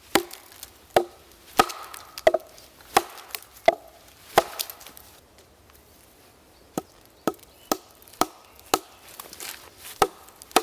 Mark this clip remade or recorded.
recorded